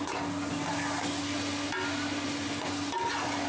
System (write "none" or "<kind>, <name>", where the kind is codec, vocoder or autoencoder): none